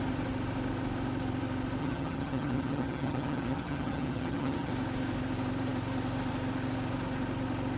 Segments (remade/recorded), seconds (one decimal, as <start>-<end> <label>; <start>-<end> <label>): 0.0-1.8 recorded; 1.8-4.7 remade; 4.7-7.8 recorded